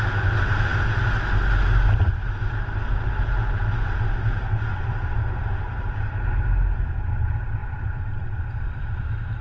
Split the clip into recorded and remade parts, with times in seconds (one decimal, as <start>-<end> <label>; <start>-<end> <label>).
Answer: 0.0-9.4 recorded